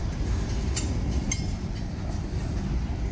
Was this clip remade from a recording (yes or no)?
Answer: no